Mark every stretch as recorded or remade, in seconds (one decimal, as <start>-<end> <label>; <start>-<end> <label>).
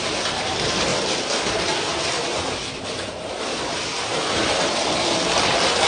0.0-5.9 recorded